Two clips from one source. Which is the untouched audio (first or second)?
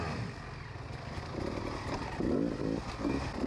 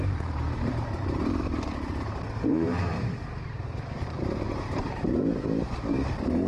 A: first